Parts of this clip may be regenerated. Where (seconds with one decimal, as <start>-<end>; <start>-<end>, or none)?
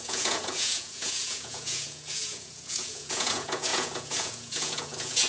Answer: 0.0-5.3